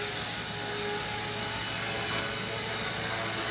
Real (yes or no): yes